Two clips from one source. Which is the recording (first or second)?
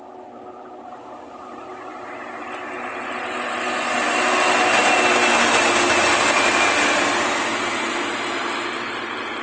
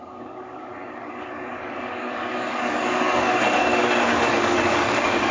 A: first